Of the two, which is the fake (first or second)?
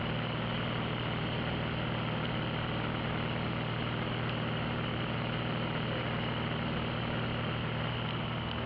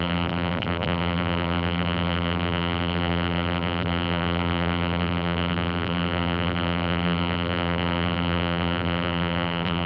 second